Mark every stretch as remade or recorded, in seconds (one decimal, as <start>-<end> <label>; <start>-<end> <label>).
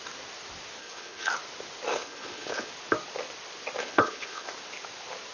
0.0-0.8 recorded; 0.8-1.3 remade; 1.3-1.9 recorded; 1.9-2.7 remade; 2.7-3.8 recorded; 3.8-4.5 remade; 4.5-5.3 recorded